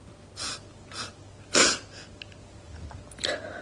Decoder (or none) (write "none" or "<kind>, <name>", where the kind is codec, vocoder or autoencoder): none